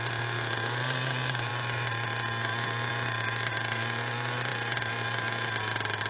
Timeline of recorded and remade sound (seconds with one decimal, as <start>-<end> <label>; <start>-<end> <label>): 0.0-6.1 recorded